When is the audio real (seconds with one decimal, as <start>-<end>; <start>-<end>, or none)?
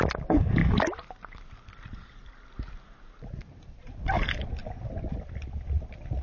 0.0-6.2